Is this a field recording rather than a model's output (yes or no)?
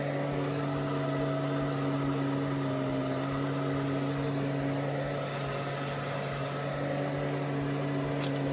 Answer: yes